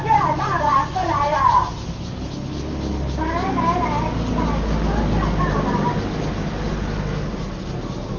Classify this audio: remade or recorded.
recorded